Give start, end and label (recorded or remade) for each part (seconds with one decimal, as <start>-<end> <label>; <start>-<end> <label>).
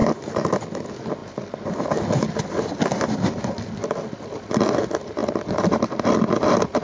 0.0-0.6 remade; 0.6-6.8 recorded